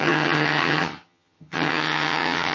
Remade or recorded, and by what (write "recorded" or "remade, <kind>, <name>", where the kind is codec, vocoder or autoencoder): remade, vocoder, HiFi-GAN